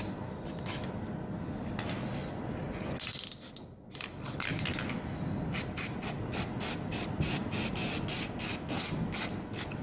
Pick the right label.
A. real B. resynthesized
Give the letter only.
A